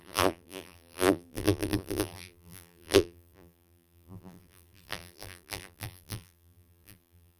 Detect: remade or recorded remade